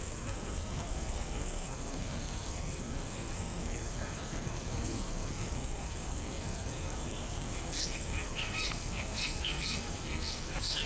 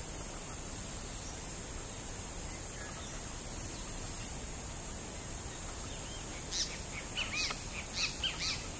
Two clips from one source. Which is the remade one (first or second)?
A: first